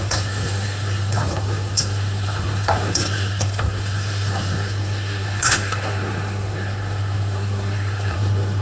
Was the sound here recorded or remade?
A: remade